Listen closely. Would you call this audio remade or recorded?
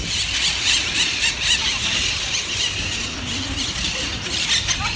recorded